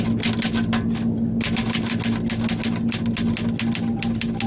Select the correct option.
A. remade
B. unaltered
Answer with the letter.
B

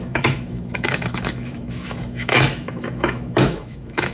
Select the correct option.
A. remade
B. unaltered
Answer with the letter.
A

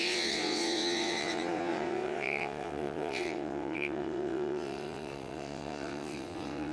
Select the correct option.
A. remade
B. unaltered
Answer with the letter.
A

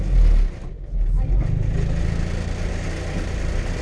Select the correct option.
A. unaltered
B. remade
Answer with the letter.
A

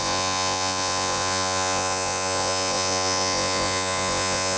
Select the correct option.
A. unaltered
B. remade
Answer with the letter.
B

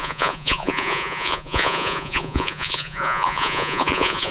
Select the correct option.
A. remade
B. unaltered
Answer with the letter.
A